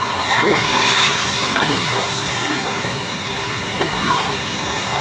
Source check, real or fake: fake